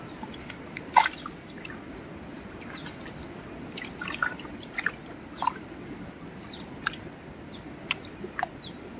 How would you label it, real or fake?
real